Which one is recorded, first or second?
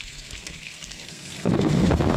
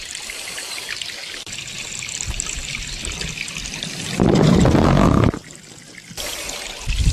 second